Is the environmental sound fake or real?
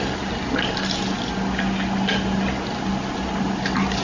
real